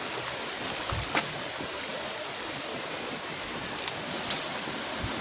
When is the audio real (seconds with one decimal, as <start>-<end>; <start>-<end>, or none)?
0.0-5.2

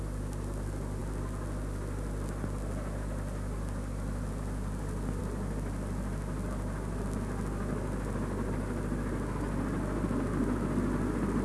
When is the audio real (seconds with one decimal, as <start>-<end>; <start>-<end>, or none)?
0.0-11.4

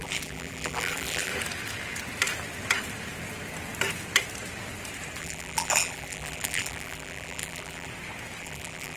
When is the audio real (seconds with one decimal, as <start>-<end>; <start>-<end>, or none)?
1.3-5.2; 7.9-8.4

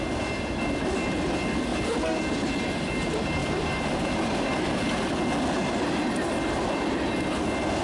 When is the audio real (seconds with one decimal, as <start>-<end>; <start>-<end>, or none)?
0.0-1.7; 2.2-3.4; 4.8-7.8

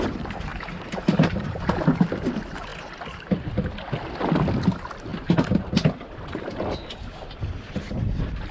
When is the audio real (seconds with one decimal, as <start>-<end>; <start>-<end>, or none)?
0.0-0.5; 1.8-8.5

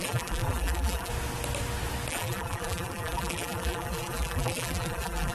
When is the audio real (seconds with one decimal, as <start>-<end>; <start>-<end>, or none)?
1.1-2.1

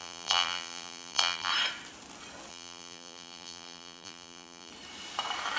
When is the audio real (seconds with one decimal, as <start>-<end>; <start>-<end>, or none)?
1.5-2.5; 4.7-5.6